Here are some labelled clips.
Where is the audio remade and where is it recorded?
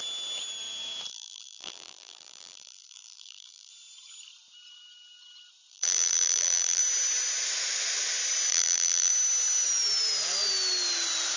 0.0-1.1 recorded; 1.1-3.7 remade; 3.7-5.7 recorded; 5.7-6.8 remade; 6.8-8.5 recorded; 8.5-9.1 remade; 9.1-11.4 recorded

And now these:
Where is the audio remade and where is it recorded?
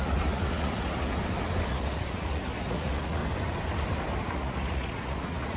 0.0-1.1 remade; 1.1-1.7 recorded; 1.7-3.2 remade; 3.2-4.2 recorded; 4.2-5.6 remade